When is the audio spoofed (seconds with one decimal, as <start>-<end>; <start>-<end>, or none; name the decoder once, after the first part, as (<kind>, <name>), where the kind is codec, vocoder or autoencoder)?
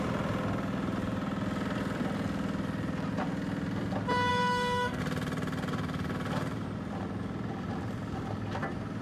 4.3-5.0 (codec, SNAC)